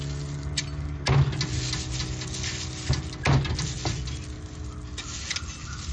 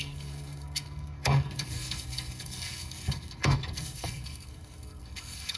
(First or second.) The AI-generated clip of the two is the second